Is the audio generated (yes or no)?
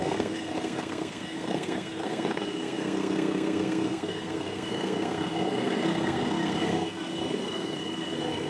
yes